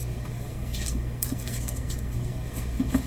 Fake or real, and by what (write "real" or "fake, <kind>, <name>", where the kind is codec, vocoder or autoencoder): fake, codec, SNAC